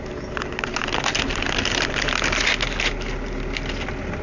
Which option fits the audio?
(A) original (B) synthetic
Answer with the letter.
A